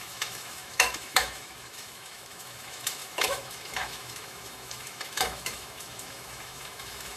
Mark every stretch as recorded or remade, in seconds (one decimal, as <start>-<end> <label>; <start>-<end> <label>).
0.0-7.2 remade